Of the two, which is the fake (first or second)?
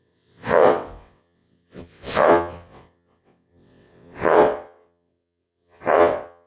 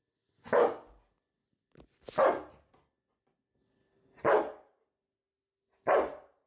first